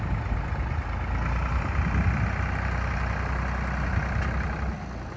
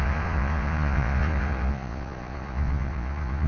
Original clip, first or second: first